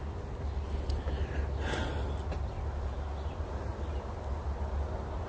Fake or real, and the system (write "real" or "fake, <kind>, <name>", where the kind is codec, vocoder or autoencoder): real